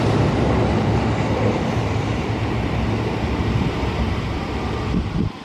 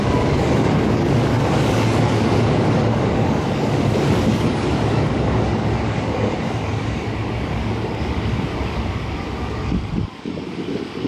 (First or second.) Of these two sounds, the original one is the first